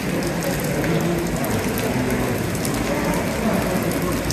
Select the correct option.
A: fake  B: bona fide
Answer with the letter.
B